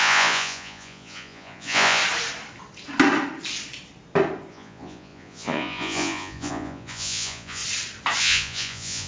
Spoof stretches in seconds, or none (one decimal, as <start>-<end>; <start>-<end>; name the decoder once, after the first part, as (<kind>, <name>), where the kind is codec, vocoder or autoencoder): 0.0-2.0 (vocoder, Vocos); 4.5-7.6; 8.2-9.1